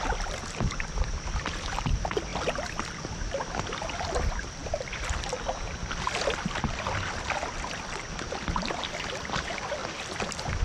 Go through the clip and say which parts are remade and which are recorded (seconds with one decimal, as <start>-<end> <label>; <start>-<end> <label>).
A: 0.0-5.8 remade; 5.8-7.5 recorded; 7.5-10.6 remade